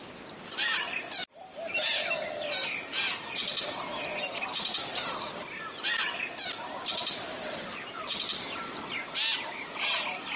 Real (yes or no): yes